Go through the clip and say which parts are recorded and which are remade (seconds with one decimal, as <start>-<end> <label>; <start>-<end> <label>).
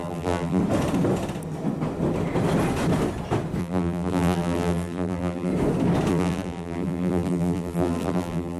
0.0-0.6 remade; 0.6-3.6 recorded; 3.6-5.5 remade; 5.5-6.1 recorded; 6.1-8.6 remade